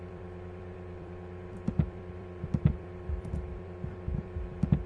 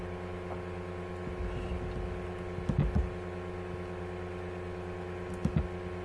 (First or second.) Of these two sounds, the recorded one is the second